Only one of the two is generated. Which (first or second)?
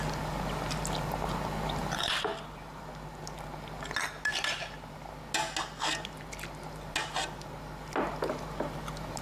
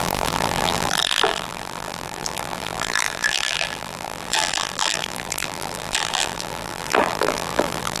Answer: second